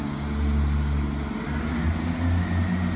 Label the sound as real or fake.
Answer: real